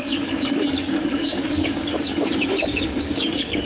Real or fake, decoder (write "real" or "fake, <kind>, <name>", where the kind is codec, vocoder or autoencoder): fake, codec, DAC